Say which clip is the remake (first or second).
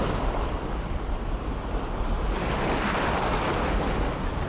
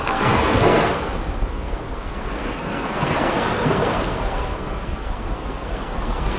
second